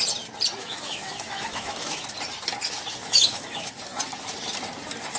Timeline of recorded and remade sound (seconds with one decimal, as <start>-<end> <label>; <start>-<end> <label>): 0.0-0.6 recorded; 0.6-2.0 remade; 2.0-3.0 recorded; 3.0-3.7 remade; 3.7-5.2 recorded